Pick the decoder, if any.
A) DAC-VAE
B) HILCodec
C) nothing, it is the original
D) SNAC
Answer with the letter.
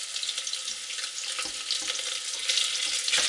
C